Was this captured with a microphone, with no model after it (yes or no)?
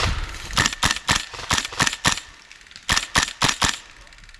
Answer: yes